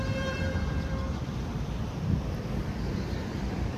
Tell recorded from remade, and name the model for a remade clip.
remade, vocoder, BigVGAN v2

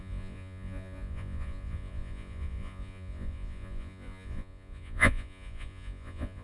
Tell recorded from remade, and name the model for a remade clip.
remade, vocoder, Vocos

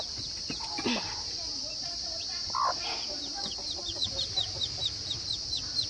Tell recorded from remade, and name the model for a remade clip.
recorded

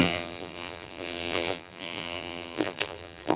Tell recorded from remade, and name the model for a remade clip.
remade, vocoder, BigVGAN v2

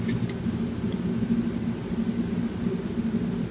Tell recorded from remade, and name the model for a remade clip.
recorded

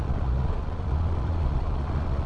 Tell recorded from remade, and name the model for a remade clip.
remade, vocoder, Vocos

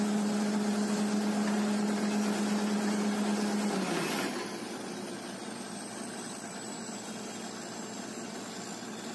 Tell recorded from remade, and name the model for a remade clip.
recorded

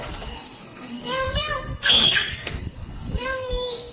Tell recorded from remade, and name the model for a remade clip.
remade, codec, SNAC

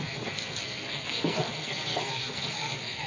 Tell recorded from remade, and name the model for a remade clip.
remade, codec, SNAC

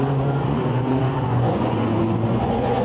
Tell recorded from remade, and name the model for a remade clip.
remade, vocoder, Vocos